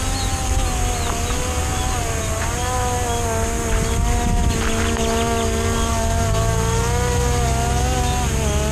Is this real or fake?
real